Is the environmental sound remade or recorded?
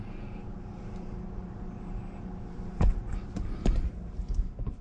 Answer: remade